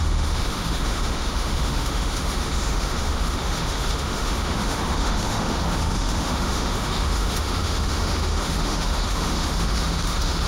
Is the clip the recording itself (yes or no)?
no